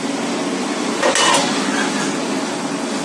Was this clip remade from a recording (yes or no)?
no